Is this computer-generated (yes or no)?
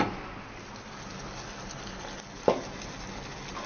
no